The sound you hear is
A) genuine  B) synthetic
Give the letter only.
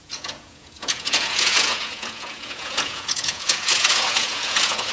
B